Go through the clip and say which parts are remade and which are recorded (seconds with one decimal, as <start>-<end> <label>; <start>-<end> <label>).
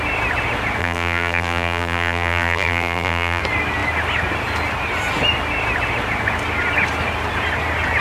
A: 0.0-0.8 recorded; 0.8-3.4 remade; 3.4-8.0 recorded